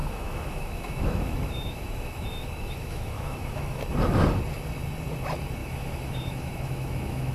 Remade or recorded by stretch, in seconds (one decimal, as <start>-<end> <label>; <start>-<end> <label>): 0.0-3.8 remade; 3.8-5.6 recorded; 5.6-7.3 remade

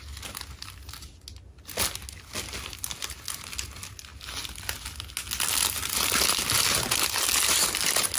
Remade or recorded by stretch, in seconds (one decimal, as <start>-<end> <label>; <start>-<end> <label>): 0.0-8.2 recorded

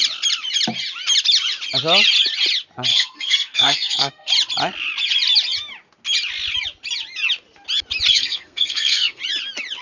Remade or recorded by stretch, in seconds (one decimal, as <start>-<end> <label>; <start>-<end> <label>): 0.0-2.9 recorded; 2.9-4.3 remade; 4.3-8.1 recorded; 8.1-9.2 remade; 9.2-9.8 recorded

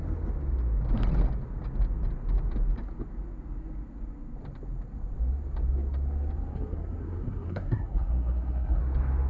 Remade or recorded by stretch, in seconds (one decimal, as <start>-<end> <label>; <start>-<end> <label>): 0.0-6.5 recorded; 6.5-8.8 remade; 8.8-9.3 recorded

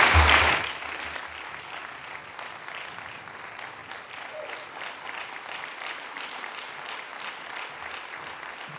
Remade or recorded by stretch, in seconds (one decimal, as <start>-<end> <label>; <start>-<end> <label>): 0.0-8.8 recorded

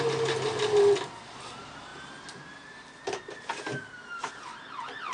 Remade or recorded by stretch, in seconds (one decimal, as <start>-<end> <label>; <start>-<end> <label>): 0.0-5.1 recorded

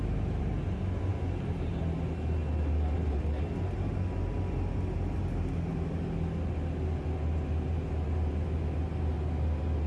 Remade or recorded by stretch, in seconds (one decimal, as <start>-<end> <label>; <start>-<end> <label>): 0.0-1.1 recorded; 1.1-1.7 remade; 1.7-9.9 recorded